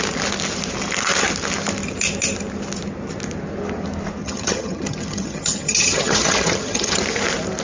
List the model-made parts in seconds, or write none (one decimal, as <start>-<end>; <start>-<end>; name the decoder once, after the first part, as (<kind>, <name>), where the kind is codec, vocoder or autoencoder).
4.2-7.0 (vocoder, HiFi-GAN)